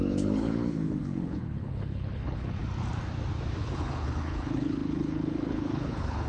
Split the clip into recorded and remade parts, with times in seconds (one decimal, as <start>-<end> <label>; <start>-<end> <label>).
0.0-2.6 remade; 2.6-3.6 recorded; 3.6-6.3 remade